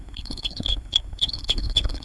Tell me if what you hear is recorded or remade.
remade